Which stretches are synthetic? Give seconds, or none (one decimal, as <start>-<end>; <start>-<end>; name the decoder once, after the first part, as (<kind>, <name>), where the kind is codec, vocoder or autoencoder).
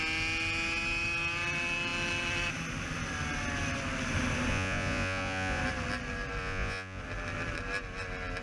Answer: 4.5-5.6 (vocoder, Vocos); 6.4-7.0